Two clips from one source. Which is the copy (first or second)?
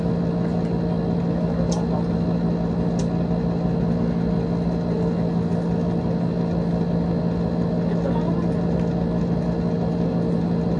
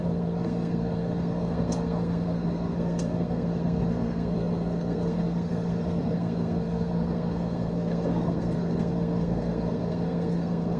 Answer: second